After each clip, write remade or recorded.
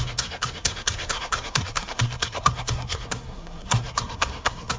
remade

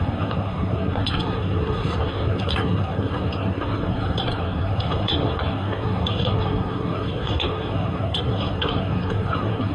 remade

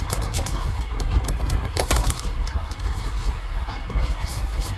remade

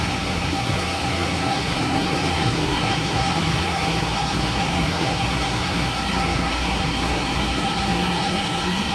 remade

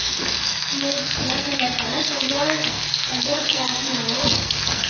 remade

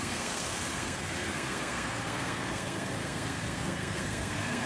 remade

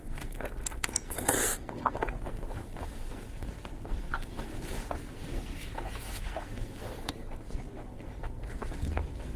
remade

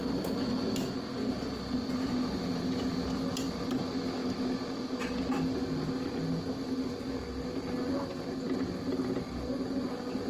recorded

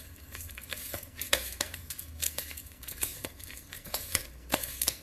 remade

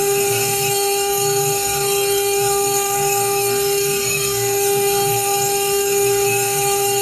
remade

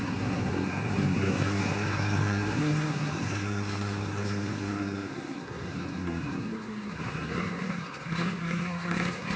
remade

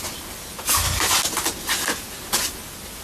recorded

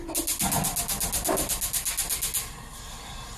recorded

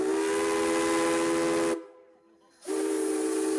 recorded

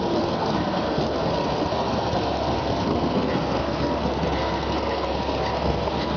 remade